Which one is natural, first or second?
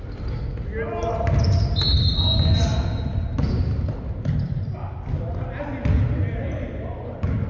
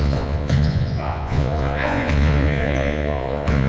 first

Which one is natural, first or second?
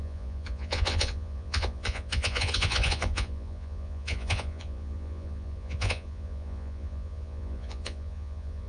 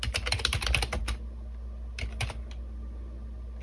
second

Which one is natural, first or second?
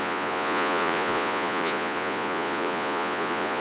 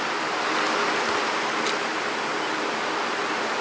second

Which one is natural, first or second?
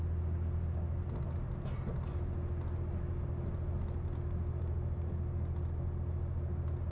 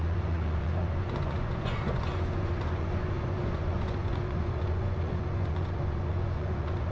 first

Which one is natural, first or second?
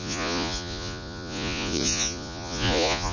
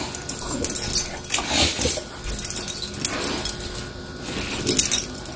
second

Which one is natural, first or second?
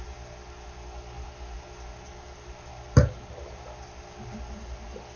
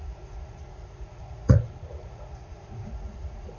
first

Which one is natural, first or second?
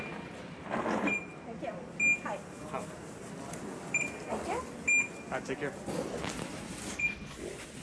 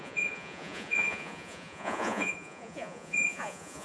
first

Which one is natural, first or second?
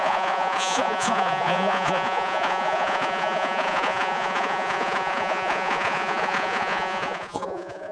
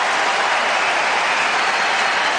second